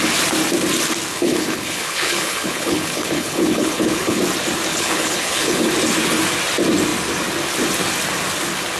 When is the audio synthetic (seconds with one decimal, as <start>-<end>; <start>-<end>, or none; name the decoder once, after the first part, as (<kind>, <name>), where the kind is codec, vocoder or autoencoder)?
1.1-4.2 (codec, HILCodec); 4.7-5.7